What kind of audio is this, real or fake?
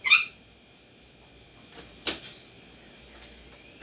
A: real